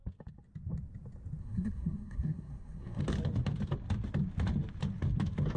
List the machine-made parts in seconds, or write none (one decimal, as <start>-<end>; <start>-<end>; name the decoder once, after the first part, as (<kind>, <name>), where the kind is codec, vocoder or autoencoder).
1.4-3.0 (codec, SNAC)